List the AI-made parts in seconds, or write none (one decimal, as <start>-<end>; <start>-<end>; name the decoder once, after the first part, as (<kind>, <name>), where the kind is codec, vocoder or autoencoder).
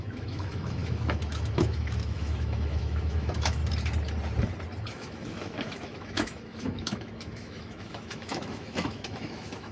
0.0-3.6 (autoencoder, DAC-VAE); 4.9-9.7